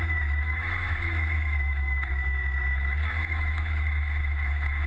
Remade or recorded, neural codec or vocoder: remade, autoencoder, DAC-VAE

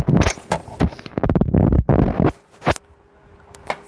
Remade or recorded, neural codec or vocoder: recorded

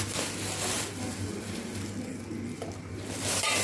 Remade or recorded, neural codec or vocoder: recorded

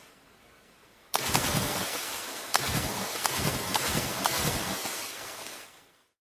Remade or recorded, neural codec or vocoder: remade, codec, SNAC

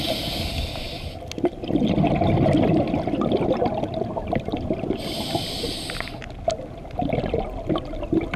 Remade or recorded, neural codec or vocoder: recorded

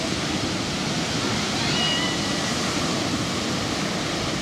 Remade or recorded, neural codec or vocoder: recorded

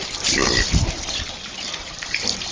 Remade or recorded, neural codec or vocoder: recorded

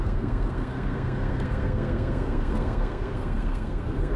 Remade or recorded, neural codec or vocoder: remade, codec, SNAC